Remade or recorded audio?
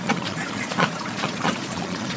remade